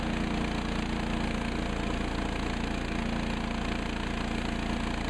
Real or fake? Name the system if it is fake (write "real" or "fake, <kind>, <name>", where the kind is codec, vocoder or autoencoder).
real